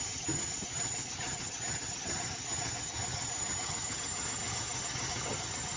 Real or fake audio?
fake